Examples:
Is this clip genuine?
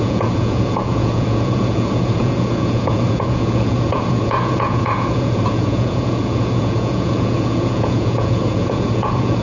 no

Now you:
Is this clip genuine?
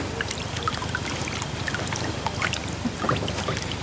yes